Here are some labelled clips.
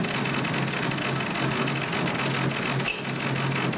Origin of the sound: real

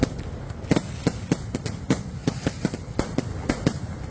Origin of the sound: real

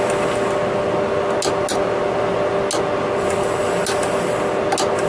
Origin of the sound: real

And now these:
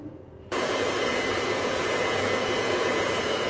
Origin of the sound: fake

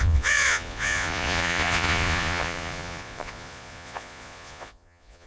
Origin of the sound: fake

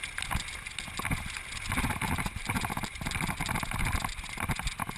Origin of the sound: real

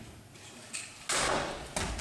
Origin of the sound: real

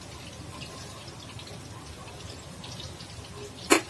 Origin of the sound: real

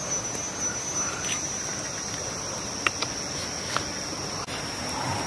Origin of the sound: real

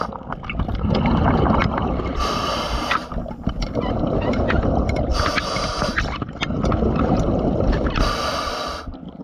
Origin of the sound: real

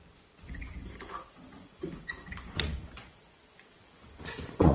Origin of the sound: fake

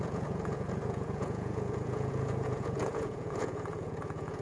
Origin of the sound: fake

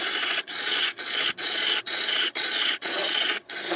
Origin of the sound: fake